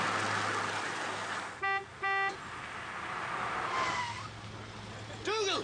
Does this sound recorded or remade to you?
recorded